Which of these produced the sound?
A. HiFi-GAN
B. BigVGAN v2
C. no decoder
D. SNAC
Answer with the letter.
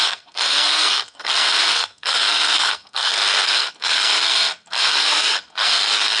D